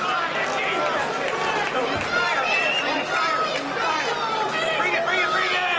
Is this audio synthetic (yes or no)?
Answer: no